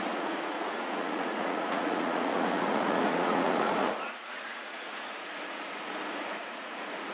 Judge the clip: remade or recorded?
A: remade